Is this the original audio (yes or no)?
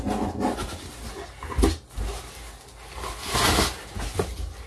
yes